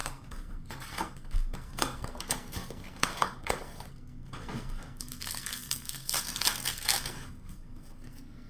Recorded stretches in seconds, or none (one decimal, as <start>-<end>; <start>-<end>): none